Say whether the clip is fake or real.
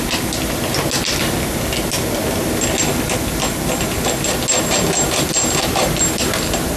real